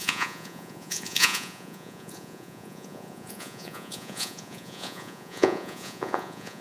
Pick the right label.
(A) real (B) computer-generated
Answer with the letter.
B